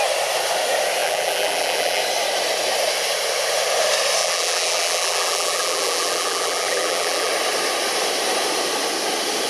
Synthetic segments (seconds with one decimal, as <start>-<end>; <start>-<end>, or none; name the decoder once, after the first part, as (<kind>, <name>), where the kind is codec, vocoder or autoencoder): 1.0-2.0 (vocoder, BigVGAN v2); 4.2-7.3